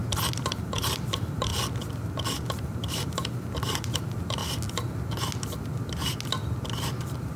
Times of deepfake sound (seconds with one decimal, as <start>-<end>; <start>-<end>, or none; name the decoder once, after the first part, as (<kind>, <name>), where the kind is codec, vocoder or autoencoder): 0.6-1.5 (vocoder, BigVGAN v2); 2.6-4.4; 6.8-7.4

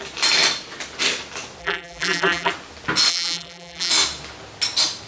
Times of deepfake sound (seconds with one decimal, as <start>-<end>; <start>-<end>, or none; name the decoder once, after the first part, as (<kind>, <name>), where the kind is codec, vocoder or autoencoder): 1.6-2.5 (vocoder, BigVGAN v2); 3.1-3.9

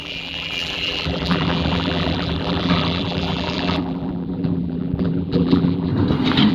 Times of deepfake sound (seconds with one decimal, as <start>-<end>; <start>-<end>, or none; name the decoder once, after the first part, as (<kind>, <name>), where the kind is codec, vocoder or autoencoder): 0.0-5.9 (vocoder, BigVGAN v2)

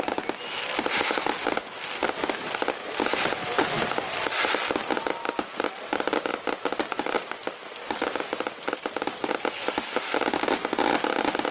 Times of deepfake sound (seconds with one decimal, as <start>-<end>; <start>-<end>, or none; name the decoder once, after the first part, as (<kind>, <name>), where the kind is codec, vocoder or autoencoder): 6.3-9.3 (vocoder, BigVGAN v2)

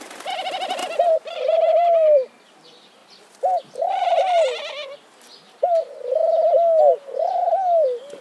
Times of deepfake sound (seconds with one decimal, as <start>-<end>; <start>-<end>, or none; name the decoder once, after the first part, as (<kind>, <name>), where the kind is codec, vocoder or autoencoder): 0.8-1.4 (vocoder, BigVGAN v2)